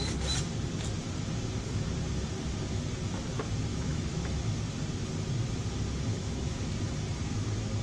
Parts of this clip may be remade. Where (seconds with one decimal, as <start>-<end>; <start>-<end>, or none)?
3.7-4.5; 6.1-6.7